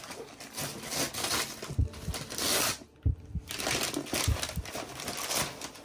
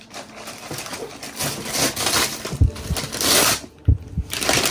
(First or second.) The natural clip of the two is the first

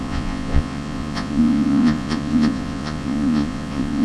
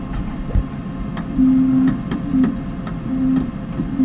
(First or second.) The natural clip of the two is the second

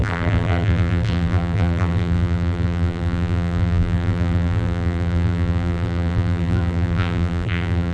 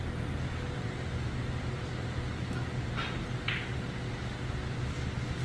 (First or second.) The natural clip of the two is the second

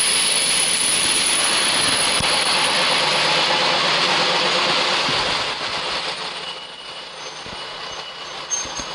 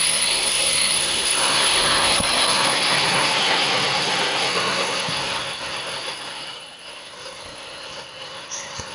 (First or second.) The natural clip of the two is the first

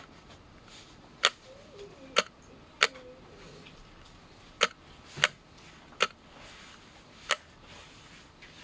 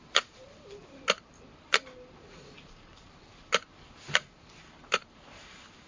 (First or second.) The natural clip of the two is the first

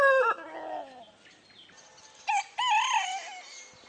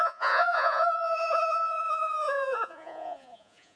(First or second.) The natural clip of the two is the first